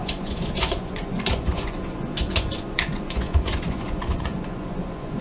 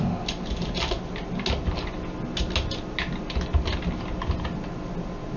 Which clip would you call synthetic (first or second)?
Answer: first